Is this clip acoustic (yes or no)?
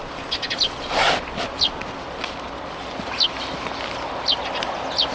yes